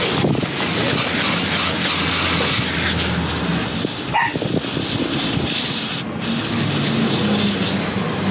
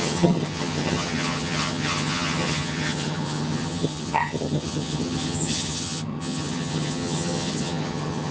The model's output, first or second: second